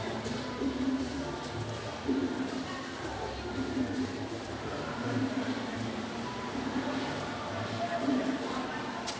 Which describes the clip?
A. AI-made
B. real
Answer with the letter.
A